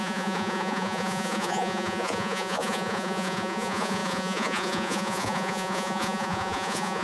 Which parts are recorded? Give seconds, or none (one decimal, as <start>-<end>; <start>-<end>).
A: none